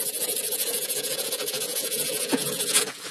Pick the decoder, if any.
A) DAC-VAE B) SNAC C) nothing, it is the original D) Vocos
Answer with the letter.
D